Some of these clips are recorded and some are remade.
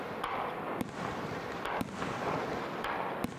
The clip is recorded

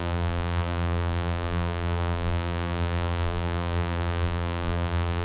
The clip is remade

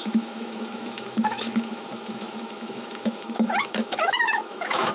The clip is remade